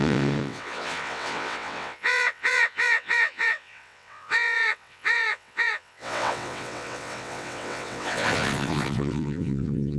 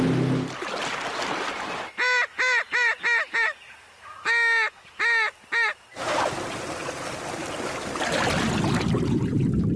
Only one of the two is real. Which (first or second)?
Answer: second